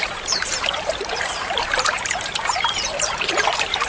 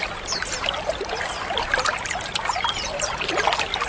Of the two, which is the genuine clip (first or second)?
second